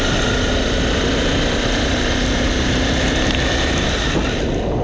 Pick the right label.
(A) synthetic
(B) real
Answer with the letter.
B